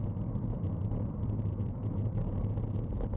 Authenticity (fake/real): real